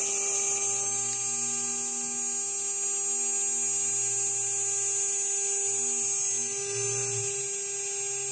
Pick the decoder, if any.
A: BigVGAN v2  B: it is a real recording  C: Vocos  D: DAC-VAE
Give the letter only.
B